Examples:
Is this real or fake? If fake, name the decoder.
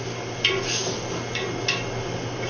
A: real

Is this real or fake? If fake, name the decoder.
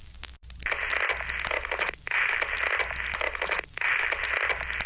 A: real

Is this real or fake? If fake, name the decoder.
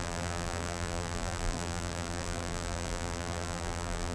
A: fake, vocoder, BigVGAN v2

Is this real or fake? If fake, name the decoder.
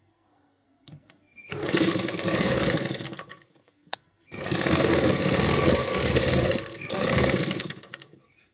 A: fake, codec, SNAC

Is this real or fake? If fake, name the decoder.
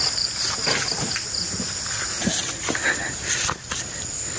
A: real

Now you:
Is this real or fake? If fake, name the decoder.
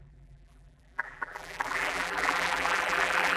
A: fake, vocoder, BigVGAN v2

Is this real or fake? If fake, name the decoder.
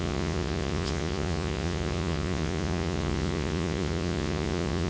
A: fake, vocoder, Vocos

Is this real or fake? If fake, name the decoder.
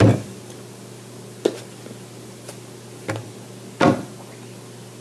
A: real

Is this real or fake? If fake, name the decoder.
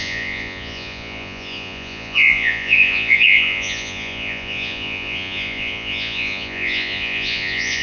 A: fake, vocoder, Vocos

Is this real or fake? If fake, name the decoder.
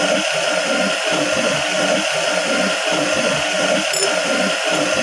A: real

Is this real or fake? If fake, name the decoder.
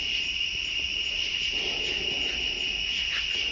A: real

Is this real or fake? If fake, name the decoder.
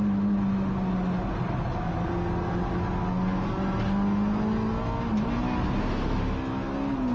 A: real